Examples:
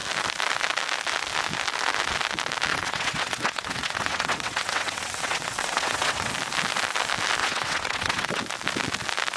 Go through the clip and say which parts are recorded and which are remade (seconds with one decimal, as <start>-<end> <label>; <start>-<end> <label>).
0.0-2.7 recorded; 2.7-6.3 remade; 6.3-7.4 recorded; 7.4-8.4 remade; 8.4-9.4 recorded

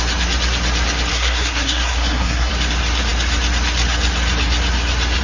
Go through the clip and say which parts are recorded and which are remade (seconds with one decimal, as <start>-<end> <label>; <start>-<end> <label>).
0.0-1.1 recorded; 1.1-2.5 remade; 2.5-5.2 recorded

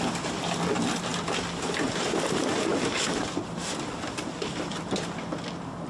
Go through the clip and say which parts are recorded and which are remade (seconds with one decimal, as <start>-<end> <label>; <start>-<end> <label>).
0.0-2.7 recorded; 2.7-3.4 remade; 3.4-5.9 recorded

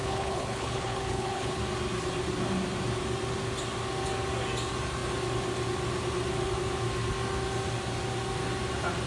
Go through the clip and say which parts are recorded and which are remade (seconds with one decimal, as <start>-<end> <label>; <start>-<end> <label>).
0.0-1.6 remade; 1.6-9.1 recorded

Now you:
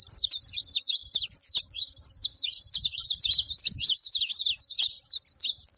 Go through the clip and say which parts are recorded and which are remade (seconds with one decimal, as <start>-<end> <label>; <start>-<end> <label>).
0.0-3.6 recorded; 3.6-4.3 remade; 4.3-5.8 recorded